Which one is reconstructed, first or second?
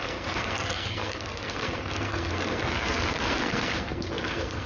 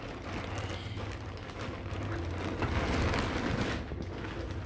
first